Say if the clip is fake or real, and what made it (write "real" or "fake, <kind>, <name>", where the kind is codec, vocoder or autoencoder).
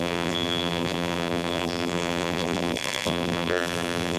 fake, vocoder, BigVGAN v2